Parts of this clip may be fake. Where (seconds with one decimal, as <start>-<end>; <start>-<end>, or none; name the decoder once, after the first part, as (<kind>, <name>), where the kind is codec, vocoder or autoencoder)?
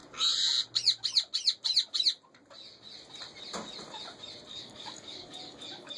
4.5-6.0 (codec, DAC)